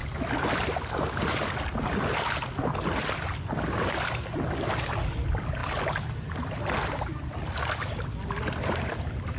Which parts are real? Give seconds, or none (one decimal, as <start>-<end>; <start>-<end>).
0.0-9.4